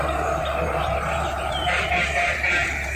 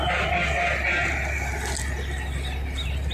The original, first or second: second